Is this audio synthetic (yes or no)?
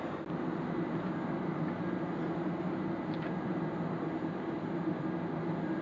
no